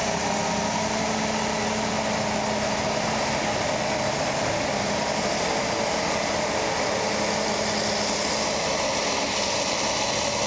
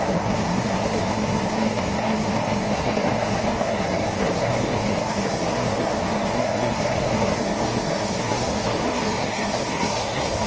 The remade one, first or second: second